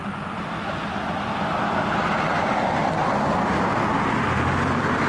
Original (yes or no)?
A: yes